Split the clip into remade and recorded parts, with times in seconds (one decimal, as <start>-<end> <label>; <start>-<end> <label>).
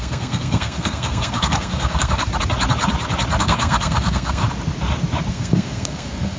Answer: 0.0-2.3 remade; 2.3-3.4 recorded; 3.4-4.4 remade; 4.4-5.3 recorded; 5.3-6.4 remade